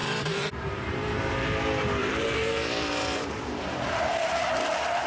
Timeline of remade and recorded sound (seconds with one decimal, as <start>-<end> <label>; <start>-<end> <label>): 0.0-1.3 remade; 1.3-2.0 recorded; 2.0-3.7 remade; 3.7-5.1 recorded